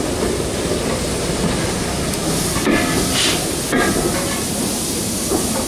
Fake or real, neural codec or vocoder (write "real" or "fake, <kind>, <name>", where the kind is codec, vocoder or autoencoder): real